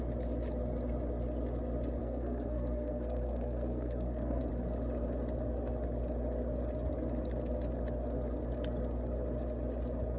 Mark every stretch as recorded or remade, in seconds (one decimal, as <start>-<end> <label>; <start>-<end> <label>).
0.0-2.0 recorded; 2.0-4.5 remade; 4.5-10.2 recorded